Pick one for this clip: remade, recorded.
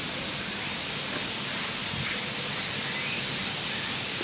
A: recorded